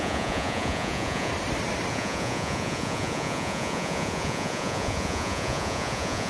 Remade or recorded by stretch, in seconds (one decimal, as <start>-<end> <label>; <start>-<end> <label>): 0.0-1.3 remade; 1.3-1.9 recorded; 1.9-6.3 remade